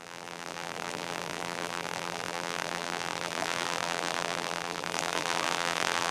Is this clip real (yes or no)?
no